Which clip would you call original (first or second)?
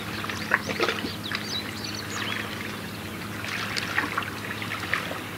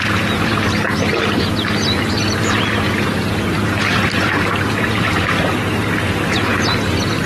first